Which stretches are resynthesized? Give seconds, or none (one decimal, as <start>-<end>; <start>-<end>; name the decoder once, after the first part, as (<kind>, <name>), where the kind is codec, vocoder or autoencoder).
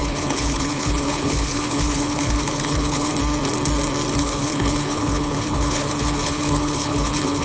0.0-3.1 (codec, HILCodec); 4.2-7.4